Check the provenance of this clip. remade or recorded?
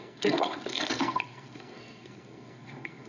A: remade